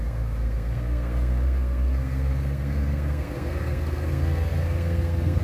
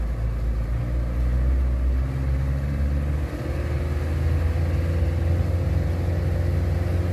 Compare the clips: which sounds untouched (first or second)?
second